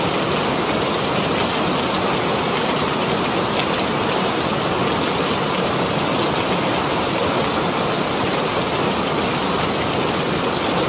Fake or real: real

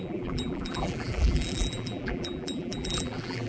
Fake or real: fake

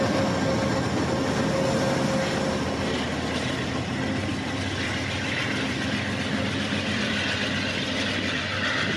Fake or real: real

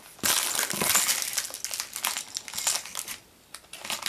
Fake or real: real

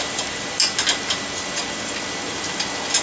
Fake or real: real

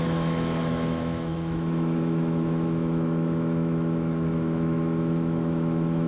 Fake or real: fake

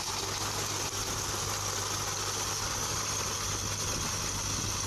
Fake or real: real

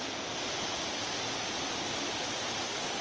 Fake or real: real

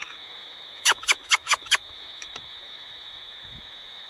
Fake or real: fake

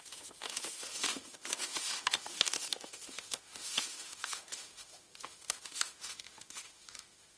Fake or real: fake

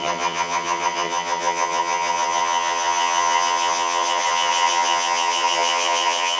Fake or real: fake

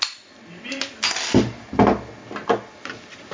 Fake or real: real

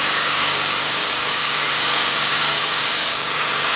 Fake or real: fake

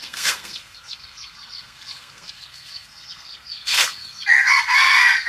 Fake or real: fake